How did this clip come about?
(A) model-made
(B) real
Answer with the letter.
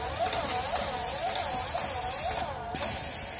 B